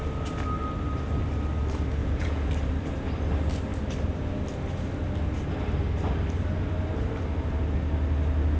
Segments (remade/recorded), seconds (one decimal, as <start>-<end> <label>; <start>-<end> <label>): 0.0-2.0 recorded; 2.0-2.5 remade; 2.5-8.6 recorded